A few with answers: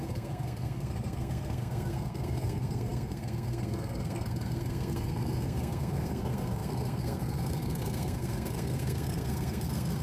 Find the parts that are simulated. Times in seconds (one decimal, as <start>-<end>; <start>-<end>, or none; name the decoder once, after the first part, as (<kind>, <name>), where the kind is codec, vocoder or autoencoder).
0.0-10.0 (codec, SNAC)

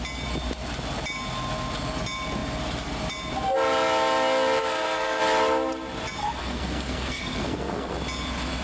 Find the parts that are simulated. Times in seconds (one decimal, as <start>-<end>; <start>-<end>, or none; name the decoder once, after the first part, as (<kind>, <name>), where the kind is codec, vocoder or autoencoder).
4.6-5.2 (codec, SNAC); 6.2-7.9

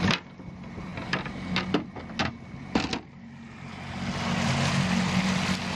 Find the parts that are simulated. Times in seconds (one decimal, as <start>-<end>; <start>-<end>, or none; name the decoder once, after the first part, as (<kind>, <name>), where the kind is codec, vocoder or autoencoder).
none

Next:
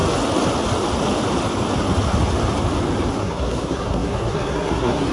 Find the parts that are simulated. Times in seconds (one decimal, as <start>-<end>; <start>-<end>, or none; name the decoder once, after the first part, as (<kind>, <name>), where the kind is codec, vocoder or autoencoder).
3.1-5.1 (codec, SNAC)

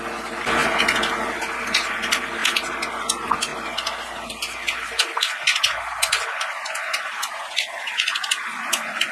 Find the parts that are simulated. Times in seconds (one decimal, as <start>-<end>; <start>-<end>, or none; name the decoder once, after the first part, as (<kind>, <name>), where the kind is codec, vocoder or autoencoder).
none

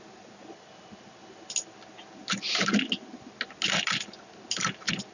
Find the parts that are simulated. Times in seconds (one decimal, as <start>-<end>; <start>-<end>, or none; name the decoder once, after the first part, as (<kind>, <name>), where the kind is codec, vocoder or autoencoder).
none

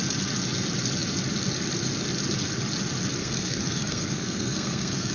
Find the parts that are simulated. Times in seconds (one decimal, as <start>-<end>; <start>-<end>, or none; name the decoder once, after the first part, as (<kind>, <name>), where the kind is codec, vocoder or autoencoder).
3.2-5.1 (codec, SNAC)